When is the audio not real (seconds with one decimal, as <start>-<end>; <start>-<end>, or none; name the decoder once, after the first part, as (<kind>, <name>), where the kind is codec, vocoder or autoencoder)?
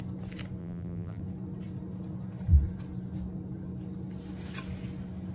0.6-1.2 (vocoder, BigVGAN v2)